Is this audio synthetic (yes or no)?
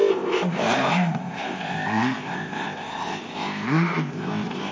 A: yes